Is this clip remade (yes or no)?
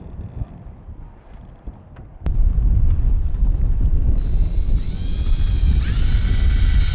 no